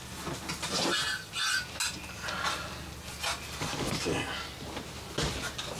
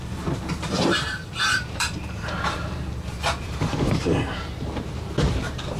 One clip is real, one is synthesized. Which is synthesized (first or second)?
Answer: second